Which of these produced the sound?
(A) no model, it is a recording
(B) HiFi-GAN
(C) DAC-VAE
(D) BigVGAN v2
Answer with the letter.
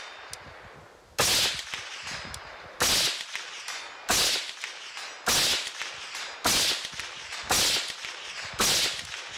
A